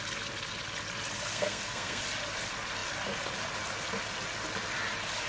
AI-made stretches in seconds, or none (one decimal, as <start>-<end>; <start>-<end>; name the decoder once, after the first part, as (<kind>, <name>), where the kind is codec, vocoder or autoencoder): 1.3-2.0 (codec, SNAC)